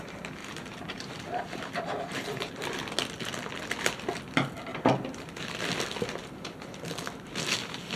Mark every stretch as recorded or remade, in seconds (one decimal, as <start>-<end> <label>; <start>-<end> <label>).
0.0-0.4 recorded; 0.4-2.5 remade; 2.5-4.7 recorded; 4.7-5.3 remade; 5.3-6.2 recorded; 6.2-6.9 remade; 6.9-8.0 recorded